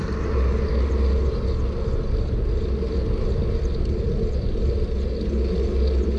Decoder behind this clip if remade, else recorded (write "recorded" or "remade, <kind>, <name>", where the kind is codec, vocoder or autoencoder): recorded